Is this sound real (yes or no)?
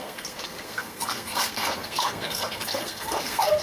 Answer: no